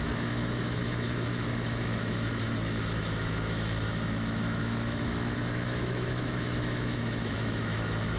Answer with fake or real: fake